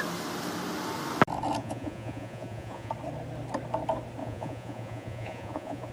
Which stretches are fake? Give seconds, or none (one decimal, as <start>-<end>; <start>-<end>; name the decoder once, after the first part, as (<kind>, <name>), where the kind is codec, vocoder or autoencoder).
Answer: 1.6-2.9 (vocoder, Vocos); 4.2-5.9